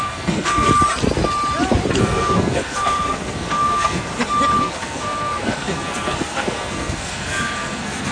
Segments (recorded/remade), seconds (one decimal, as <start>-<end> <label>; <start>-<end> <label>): 0.0-0.7 remade; 0.7-2.0 recorded; 2.0-4.1 remade; 4.1-4.6 recorded; 4.6-8.1 remade